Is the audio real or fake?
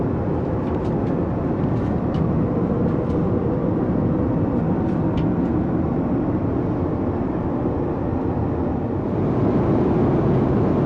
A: real